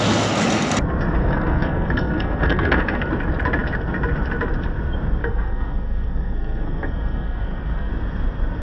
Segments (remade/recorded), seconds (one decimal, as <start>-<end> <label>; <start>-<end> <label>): 0.0-1.2 recorded; 1.2-3.1 remade; 3.1-5.2 recorded; 5.2-7.9 remade; 7.9-8.6 recorded